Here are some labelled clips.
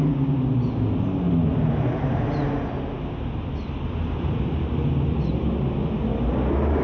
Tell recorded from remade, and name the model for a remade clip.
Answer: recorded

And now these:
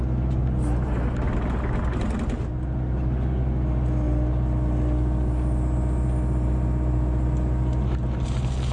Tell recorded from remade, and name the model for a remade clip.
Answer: recorded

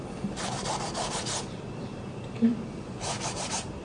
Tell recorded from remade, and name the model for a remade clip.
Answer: remade, vocoder, BigVGAN v2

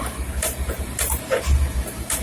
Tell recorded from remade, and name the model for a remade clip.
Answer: remade, vocoder, BigVGAN v2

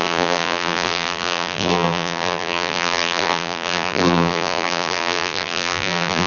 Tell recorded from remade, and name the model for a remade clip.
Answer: remade, vocoder, BigVGAN v2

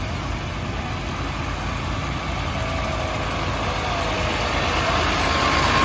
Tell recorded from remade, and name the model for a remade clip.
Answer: recorded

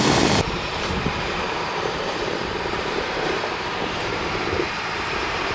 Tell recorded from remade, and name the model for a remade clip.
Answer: remade, vocoder, BigVGAN v2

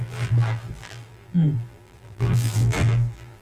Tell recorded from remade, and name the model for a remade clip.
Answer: remade, vocoder, BigVGAN v2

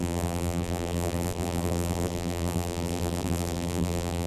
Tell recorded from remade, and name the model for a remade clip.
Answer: remade, vocoder, BigVGAN v2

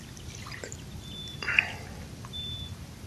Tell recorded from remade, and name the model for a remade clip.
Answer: remade, vocoder, BigVGAN v2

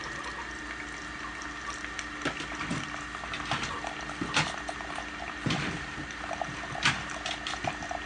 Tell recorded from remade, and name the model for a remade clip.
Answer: recorded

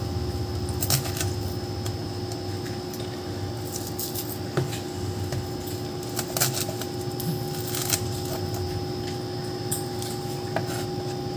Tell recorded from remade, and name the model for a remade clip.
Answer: recorded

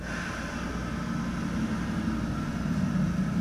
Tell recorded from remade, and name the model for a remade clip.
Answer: recorded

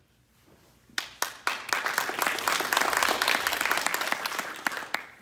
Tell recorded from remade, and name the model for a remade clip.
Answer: recorded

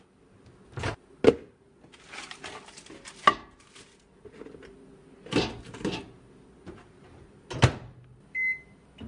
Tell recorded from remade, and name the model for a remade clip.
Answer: recorded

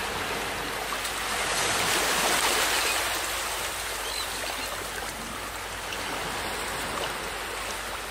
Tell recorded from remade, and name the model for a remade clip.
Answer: recorded